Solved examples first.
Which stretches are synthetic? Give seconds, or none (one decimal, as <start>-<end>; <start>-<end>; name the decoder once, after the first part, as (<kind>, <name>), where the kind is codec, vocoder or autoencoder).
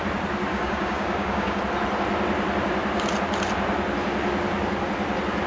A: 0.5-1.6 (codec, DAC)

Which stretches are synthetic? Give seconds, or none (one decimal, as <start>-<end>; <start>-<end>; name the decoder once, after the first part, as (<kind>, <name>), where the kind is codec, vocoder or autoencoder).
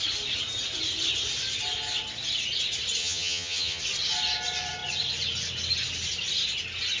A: 3.0-3.8 (vocoder, HiFi-GAN)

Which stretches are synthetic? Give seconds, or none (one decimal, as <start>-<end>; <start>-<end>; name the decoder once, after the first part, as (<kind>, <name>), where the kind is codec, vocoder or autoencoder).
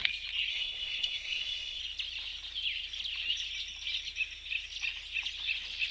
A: 0.5-1.8 (codec, SNAC)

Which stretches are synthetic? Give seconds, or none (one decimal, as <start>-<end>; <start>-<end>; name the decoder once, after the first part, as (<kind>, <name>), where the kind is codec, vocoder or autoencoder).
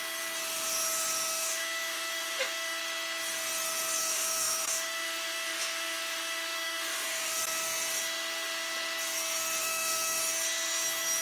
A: 1.3-2.8 (autoencoder, DAC-VAE); 4.0-7.4; 9.6-10.2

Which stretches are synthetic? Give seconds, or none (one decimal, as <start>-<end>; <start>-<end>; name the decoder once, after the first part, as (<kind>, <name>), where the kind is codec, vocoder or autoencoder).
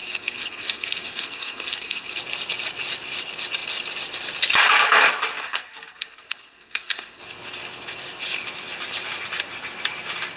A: 0.0-2.2 (codec, SNAC); 5.4-7.2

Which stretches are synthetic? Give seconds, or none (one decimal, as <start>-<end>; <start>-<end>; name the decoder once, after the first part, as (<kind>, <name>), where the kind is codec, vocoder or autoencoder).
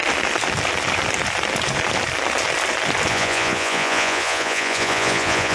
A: 3.1-5.5 (vocoder, Vocos)